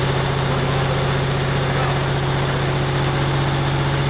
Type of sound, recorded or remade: recorded